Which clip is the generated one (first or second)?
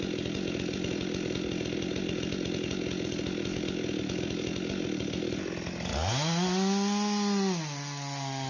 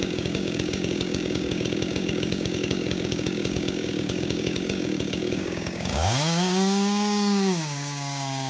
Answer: second